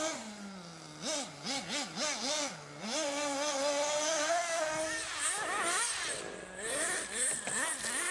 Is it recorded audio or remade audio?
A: recorded